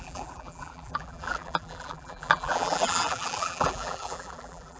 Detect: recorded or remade remade